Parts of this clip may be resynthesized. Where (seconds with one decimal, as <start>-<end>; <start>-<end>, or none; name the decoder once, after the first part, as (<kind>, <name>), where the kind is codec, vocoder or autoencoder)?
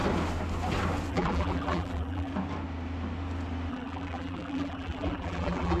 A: 1.1-2.3 (vocoder, BigVGAN v2); 3.7-5.8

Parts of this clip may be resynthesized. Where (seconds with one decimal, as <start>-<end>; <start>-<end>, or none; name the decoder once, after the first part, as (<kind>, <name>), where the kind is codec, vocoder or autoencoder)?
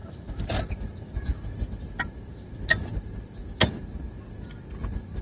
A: 0.0-0.6 (vocoder, BigVGAN v2); 1.3-2.2; 2.9-3.4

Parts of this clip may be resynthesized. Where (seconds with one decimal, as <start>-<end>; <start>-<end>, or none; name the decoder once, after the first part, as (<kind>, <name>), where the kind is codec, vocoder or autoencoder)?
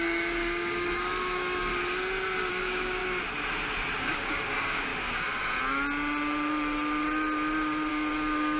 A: 0.0-1.7 (codec, DAC); 2.5-3.0; 4.0-4.9; 7.9-8.6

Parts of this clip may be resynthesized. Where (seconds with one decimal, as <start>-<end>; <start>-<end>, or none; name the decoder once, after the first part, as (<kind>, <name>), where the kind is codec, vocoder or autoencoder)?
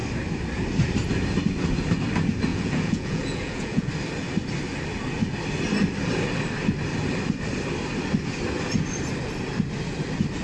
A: 2.5-3.9 (vocoder, Vocos)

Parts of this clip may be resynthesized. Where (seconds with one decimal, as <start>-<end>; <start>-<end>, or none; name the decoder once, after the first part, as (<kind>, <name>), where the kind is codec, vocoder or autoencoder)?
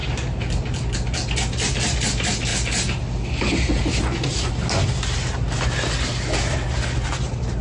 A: none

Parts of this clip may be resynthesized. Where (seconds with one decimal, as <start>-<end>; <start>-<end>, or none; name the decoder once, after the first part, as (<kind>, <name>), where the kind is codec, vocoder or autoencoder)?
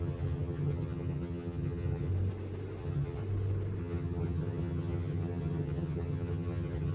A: 0.0-2.1 (vocoder, HiFi-GAN); 2.8-3.2; 3.8-6.9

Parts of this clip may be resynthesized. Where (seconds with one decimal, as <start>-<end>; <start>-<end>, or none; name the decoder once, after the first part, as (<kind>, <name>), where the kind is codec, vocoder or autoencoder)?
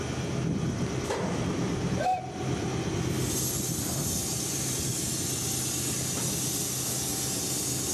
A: 4.0-5.1 (vocoder, BigVGAN v2)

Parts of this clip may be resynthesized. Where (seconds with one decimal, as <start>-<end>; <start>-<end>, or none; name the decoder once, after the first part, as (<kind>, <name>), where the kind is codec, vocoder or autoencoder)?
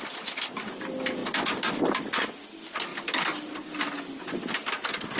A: none